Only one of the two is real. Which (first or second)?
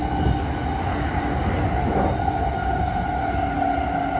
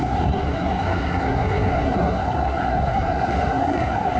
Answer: first